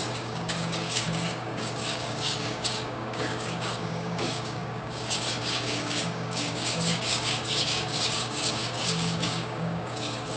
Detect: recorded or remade remade